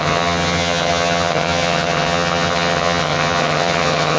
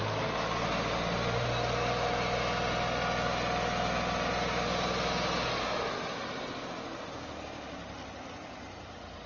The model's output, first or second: first